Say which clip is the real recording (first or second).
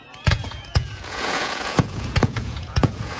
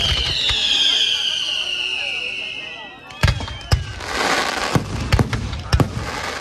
second